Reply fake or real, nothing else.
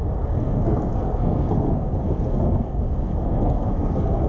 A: fake